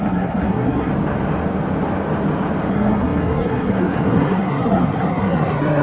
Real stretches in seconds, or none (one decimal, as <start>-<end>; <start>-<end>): 0.9-2.7